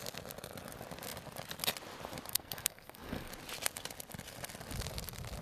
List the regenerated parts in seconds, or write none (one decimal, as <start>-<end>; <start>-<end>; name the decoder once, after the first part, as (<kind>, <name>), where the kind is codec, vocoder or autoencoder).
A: 2.3-3.3 (codec, SNAC)